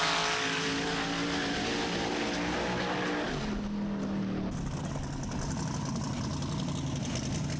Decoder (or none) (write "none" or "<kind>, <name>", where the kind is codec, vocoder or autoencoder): none